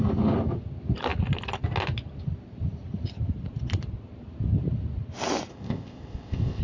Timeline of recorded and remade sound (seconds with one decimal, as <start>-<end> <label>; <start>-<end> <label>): 0.0-5.5 recorded; 5.5-6.6 remade